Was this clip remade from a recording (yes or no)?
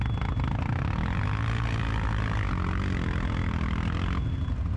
no